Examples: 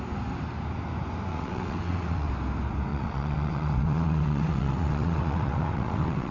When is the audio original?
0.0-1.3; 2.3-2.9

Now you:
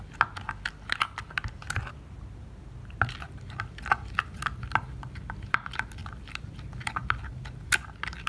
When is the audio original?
0.0-8.3

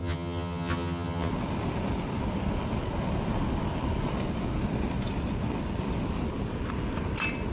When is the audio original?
1.3-7.5

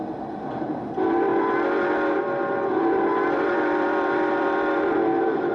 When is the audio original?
1.3-2.1

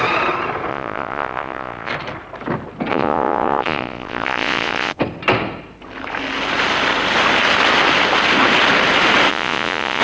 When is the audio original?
0.0-0.7; 1.9-2.9; 5.0-9.3

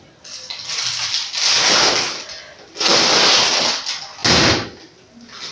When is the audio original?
0.0-5.5

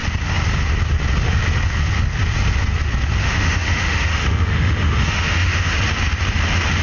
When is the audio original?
0.0-3.2; 5.7-6.8